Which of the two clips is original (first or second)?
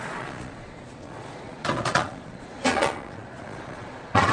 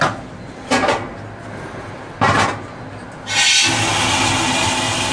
second